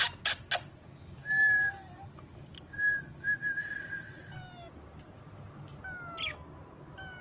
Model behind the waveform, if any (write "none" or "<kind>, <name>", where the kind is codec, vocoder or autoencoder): none